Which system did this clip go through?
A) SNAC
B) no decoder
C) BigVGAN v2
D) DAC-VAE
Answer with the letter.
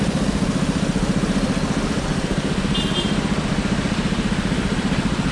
B